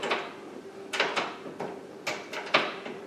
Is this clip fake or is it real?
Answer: real